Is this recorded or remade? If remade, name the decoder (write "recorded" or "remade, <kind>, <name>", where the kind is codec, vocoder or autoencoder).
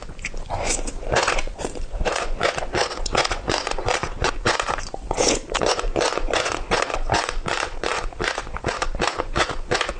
remade, vocoder, Vocos